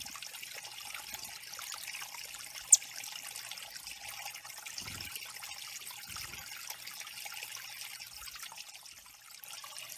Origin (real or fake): real